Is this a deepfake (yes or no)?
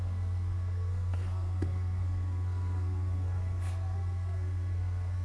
yes